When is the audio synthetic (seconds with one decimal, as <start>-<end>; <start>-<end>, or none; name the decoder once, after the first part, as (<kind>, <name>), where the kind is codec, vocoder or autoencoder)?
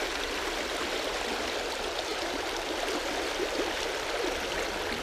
none